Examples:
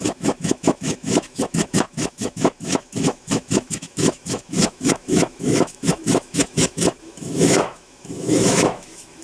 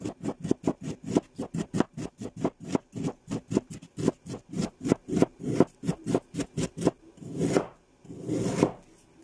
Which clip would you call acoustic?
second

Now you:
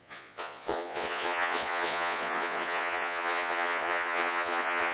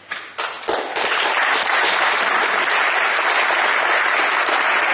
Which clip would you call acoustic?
second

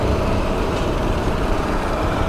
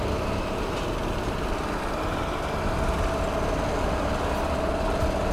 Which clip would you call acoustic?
second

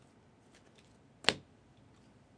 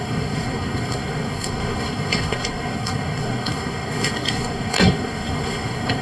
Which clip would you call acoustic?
first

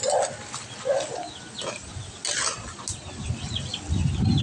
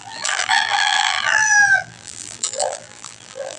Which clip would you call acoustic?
first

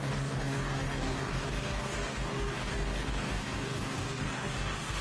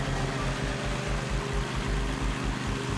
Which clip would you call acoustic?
second